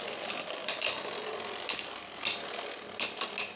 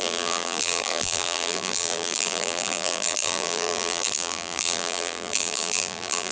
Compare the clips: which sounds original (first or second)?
first